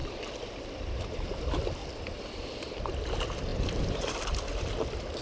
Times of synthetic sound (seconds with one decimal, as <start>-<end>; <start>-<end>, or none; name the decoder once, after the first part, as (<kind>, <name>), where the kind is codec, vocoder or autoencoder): 0.0-1.4 (vocoder, BigVGAN v2); 1.8-3.0; 3.5-4.2